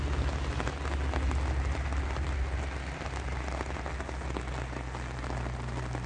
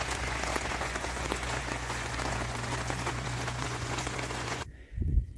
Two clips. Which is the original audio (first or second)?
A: first